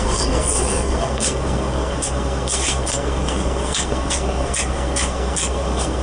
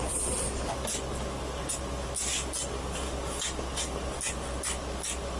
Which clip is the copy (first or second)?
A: first